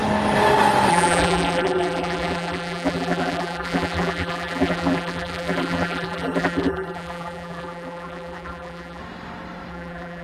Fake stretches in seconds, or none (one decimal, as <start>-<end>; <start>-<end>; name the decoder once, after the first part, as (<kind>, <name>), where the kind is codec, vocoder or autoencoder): 0.9-9.0 (vocoder, BigVGAN v2); 9.7-10.2